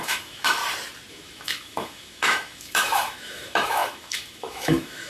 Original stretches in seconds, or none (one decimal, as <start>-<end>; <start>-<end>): 0.6-1.1